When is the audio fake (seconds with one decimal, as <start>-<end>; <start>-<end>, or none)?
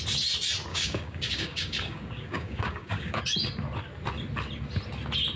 0.7-3.2